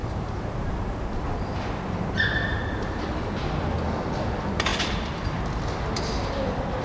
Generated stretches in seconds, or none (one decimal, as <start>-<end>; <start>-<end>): 0.0-3.0; 4.7-5.4